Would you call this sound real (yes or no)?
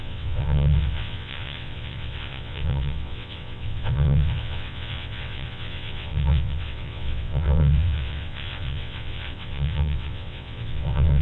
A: no